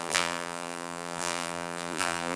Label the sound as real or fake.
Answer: fake